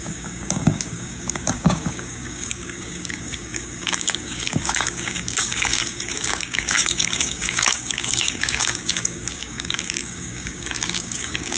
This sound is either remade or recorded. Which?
remade